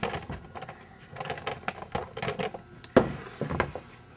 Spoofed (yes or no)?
no